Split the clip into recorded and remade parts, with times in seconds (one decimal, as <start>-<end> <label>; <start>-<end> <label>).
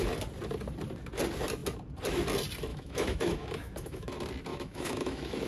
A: 0.0-2.7 recorded; 2.7-4.1 remade; 4.1-4.5 recorded; 4.5-5.5 remade